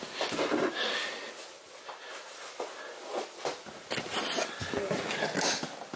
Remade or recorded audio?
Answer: recorded